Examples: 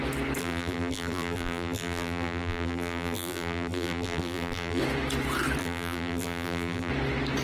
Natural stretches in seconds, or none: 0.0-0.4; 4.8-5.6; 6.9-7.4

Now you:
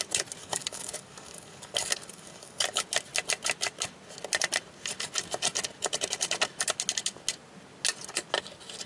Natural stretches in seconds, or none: 0.0-0.4; 2.8-8.9

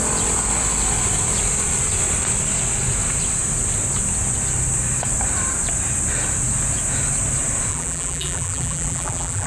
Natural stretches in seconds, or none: 0.0-7.7

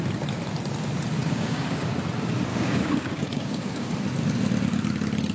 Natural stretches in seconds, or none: 0.0-1.2; 1.9-2.5; 3.9-5.3

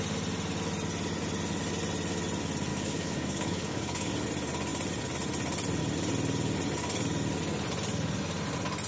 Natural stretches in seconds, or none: 0.0-2.7; 4.1-8.9

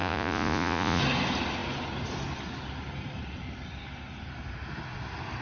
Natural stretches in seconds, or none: 1.0-5.4

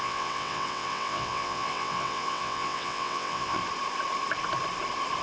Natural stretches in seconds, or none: 3.6-5.2